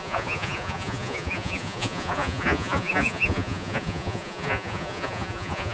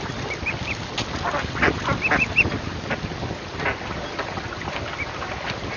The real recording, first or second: second